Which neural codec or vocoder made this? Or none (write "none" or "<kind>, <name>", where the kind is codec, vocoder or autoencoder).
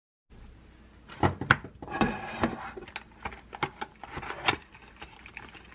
none